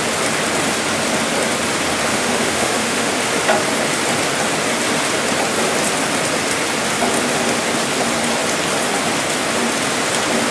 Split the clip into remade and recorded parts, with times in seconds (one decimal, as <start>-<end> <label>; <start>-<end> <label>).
0.0-2.1 recorded; 2.1-3.1 remade; 3.1-10.5 recorded